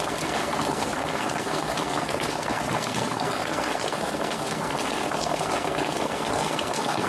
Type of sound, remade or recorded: remade